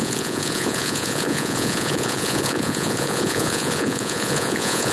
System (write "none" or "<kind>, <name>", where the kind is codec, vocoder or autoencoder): vocoder, Vocos